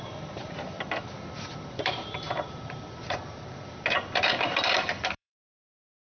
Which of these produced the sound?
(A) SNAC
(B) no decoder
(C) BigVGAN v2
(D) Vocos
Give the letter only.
C